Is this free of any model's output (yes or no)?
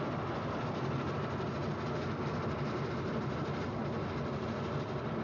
yes